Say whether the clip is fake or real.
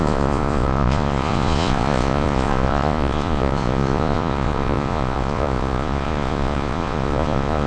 fake